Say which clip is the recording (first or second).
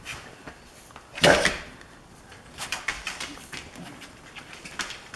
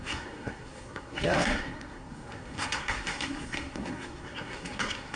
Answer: first